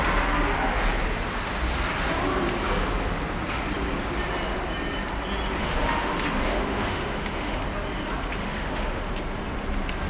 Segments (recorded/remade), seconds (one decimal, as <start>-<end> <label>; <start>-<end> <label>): 0.0-5.6 recorded; 5.6-7.6 remade; 7.6-8.4 recorded; 8.4-9.0 remade; 9.0-10.1 recorded